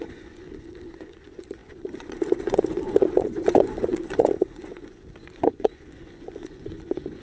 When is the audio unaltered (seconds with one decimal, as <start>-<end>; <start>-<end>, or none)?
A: none